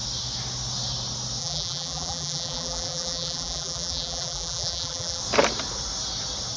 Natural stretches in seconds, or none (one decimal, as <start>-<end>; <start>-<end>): 0.0-1.4; 5.2-6.6